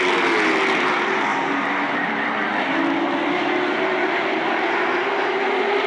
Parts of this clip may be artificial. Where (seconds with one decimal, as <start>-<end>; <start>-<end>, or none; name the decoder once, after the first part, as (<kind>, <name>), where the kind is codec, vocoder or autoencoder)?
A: none